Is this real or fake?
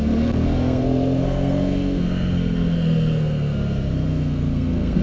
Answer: fake